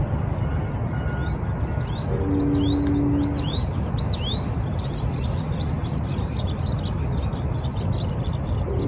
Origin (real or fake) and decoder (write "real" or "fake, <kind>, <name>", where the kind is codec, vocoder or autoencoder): real